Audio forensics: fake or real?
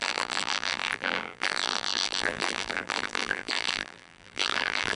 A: fake